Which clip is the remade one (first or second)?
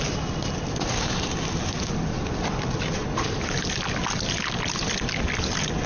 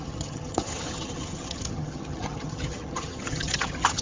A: second